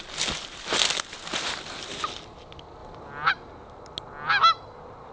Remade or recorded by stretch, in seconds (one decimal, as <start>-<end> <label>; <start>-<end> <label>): 0.0-5.1 recorded